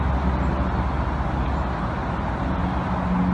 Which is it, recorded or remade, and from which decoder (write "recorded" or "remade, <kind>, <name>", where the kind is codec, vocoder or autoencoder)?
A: recorded